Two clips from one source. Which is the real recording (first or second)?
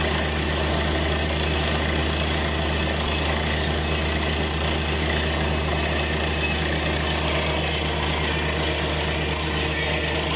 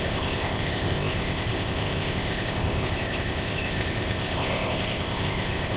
first